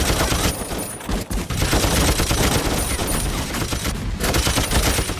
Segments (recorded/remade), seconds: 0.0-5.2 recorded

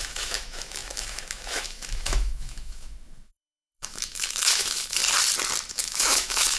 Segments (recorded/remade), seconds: 0.0-5.0 remade; 5.0-5.7 recorded; 5.7-6.6 remade

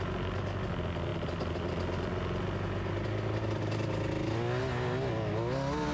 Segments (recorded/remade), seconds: 0.0-5.9 recorded